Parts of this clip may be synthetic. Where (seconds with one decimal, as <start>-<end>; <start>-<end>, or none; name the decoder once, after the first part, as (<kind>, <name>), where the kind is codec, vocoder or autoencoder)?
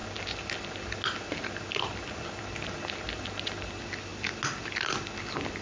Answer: none